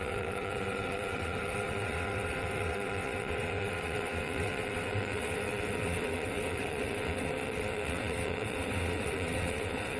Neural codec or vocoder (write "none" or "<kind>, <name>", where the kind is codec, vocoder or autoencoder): vocoder, WaveNeXt